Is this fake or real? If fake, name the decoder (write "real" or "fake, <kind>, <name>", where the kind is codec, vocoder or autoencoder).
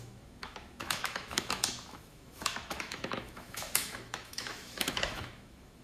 fake, autoencoder, DAC-VAE